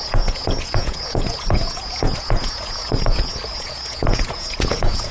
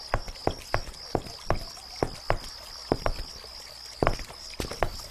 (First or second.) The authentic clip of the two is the second